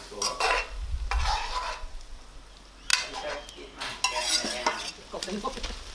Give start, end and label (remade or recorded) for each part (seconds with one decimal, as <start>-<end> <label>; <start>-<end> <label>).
0.0-5.9 recorded